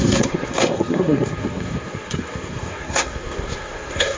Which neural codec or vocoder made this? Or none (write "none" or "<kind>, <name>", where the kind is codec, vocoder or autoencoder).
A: codec, SNAC